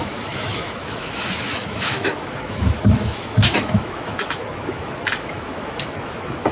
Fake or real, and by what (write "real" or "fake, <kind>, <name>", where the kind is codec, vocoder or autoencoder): fake, autoencoder, DAC-VAE